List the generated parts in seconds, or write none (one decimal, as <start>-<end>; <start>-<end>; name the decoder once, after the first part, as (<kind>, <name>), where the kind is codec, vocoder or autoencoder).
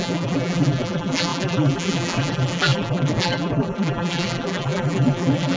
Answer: 0.0-5.6 (vocoder, BigVGAN v2)